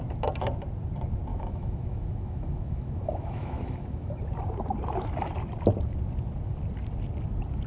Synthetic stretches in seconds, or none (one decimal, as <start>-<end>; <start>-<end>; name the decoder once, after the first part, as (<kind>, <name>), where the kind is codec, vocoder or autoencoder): 1.3-4.2 (autoencoder, DAC-VAE)